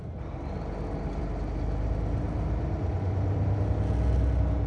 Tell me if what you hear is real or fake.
real